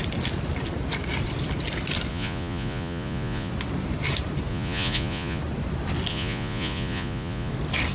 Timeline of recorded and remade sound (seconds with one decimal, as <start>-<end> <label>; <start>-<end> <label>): 0.0-2.1 recorded; 2.1-3.5 remade; 3.5-4.5 recorded; 4.5-5.4 remade; 5.4-6.1 recorded; 6.1-7.5 remade; 7.5-7.9 recorded